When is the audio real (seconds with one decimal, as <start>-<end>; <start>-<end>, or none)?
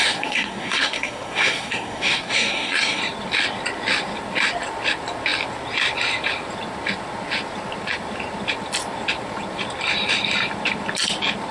3.0-11.5